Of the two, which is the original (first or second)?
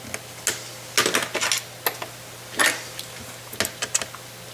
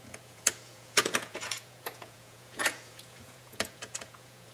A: first